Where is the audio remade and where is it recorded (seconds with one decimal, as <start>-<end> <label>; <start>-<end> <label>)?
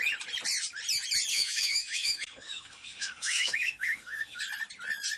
0.0-1.3 recorded; 1.3-4.4 remade; 4.4-5.2 recorded